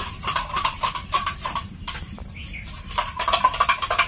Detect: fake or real fake